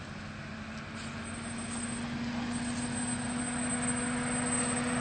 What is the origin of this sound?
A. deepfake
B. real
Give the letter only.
B